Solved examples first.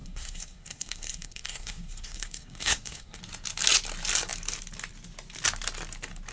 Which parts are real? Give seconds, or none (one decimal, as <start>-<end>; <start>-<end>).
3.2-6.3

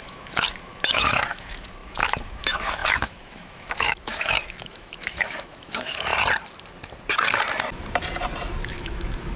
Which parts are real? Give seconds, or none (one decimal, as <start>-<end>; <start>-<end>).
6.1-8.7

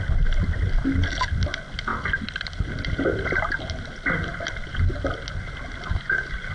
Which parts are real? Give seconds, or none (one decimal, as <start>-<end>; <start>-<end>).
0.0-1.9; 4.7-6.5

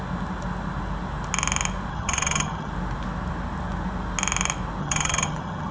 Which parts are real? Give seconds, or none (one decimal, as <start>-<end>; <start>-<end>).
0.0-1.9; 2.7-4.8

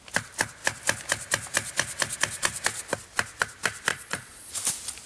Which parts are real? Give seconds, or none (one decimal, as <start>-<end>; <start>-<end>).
0.0-3.9; 4.5-5.1